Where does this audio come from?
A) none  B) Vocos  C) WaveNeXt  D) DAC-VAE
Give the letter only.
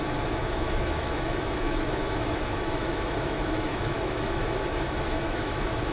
D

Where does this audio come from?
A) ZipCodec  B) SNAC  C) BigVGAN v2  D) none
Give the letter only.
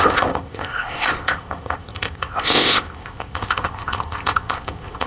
A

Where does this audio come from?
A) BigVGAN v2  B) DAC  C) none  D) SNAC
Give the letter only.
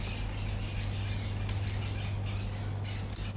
C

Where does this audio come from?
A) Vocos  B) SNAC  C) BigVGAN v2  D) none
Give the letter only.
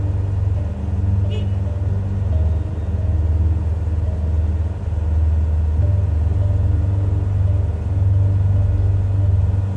D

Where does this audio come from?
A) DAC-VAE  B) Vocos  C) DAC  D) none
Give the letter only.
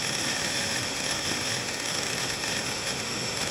A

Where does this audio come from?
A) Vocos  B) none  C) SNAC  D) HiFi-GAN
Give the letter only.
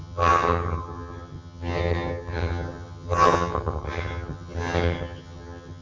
D